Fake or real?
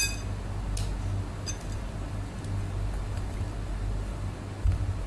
real